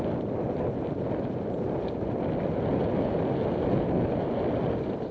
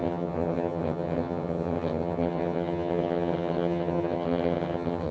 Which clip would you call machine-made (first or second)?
second